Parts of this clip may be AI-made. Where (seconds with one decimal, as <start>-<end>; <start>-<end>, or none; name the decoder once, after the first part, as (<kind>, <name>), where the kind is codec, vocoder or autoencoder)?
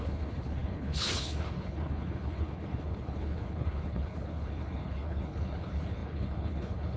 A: 0.0-7.0 (codec, HILCodec)